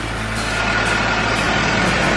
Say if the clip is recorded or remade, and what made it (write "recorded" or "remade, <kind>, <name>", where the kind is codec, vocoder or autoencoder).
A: recorded